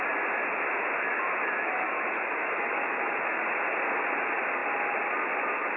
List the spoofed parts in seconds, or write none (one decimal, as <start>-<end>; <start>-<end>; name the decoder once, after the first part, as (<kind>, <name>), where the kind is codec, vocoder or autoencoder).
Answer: 1.1-3.2 (autoencoder, DAC-VAE)